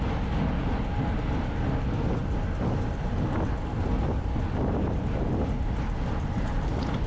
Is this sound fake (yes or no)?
no